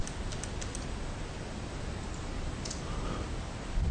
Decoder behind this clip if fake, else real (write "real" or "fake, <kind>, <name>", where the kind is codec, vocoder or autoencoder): real